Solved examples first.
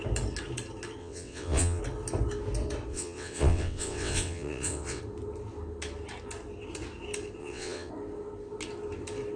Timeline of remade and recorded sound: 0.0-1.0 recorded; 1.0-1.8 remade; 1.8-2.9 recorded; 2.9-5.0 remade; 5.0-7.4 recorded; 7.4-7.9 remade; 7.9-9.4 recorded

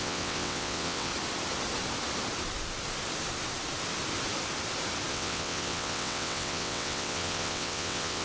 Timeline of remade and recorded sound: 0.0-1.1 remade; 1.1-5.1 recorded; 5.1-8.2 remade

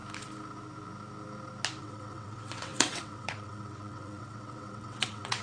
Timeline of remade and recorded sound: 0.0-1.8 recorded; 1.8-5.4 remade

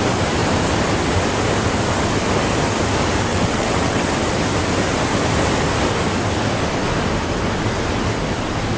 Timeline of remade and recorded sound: 0.0-3.3 recorded; 3.3-4.1 remade; 4.1-8.8 recorded

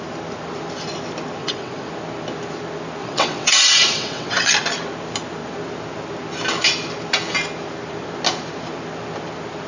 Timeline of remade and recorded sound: 0.0-1.4 recorded; 1.4-1.9 remade; 1.9-3.0 recorded; 3.0-4.5 remade; 4.5-9.7 recorded

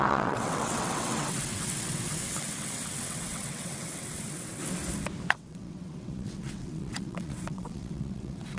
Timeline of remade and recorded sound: 0.0-4.6 remade; 4.6-5.3 recorded; 5.3-8.6 remade